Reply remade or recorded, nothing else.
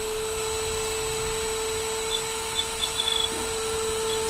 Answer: recorded